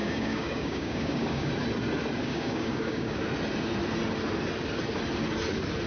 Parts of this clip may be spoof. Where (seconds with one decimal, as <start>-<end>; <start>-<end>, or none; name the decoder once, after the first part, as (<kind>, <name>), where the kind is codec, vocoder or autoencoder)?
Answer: 0.0-1.5 (codec, DAC); 2.2-3.2